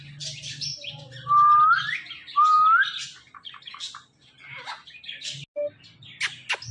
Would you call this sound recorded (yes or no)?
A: yes